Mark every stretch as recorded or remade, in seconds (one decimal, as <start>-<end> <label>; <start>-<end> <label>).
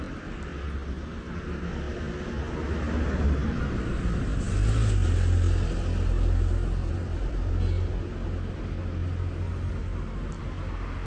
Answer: 0.0-6.8 recorded; 6.8-7.5 remade; 7.5-9.8 recorded; 9.8-10.4 remade; 10.4-11.1 recorded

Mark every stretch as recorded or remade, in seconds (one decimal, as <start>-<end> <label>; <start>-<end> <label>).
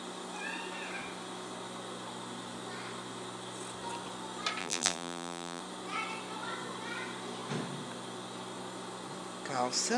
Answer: 0.0-4.6 recorded; 4.6-5.6 remade; 5.6-10.0 recorded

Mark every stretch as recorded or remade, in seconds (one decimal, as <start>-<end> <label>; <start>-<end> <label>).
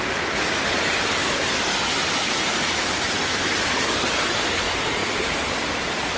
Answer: 0.0-6.2 recorded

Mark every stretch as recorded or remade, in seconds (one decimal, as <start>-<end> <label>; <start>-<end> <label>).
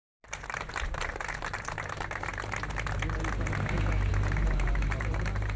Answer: 0.0-2.3 remade; 2.3-4.1 recorded; 4.1-5.6 remade